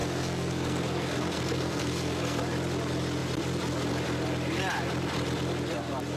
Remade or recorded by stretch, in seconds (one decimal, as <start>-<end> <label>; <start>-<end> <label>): 0.0-2.4 remade; 2.4-6.2 recorded